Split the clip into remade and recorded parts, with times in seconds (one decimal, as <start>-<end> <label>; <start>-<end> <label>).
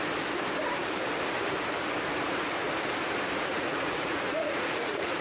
0.0-3.5 recorded; 3.5-5.2 remade